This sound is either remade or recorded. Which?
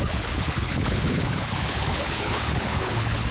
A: remade